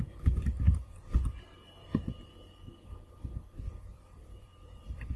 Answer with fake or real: fake